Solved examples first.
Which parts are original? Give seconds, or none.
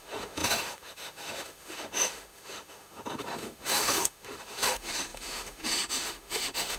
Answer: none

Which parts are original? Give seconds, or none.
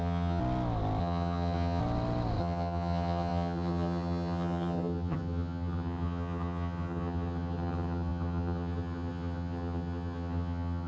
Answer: 0.4-1.0; 1.8-2.4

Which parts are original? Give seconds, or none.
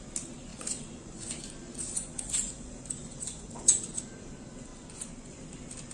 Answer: 0.0-0.5; 4.0-4.7; 5.4-5.9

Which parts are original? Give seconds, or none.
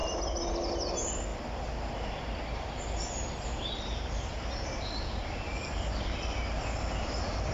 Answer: 0.0-7.5